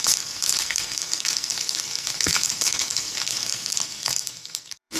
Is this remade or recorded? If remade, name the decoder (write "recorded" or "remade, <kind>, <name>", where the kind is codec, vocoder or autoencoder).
remade, codec, SNAC